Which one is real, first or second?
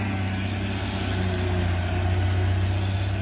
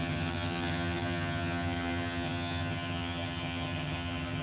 first